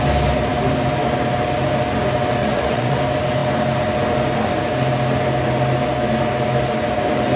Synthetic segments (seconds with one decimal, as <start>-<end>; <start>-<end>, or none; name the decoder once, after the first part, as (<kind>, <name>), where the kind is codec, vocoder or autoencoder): 2.4-3.0 (vocoder, Vocos)